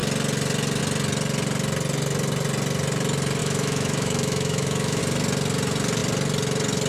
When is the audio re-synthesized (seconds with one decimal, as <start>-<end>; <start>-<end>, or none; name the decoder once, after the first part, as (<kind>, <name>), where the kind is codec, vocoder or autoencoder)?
3.4-5.0 (autoencoder, DAC-VAE)